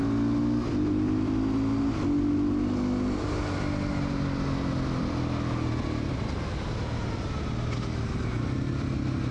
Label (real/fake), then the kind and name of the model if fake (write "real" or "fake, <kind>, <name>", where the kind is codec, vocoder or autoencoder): real